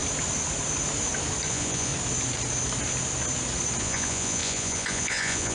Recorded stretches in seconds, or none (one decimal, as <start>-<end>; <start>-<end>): 0.0-1.5; 1.9-3.8